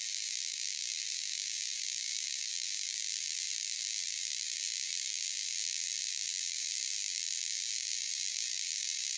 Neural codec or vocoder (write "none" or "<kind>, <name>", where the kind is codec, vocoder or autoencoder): vocoder, BigVGAN v2